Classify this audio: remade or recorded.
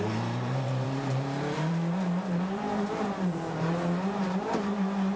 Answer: remade